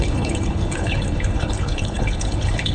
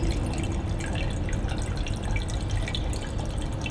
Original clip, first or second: second